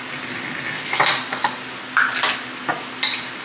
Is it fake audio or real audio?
real